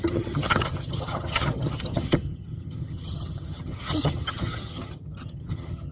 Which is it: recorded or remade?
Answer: remade